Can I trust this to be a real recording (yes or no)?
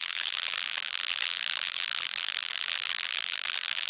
no